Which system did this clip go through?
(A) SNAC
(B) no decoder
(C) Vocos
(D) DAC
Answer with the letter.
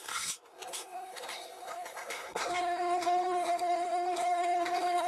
A